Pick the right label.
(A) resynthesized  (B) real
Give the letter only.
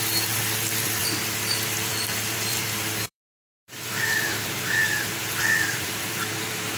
A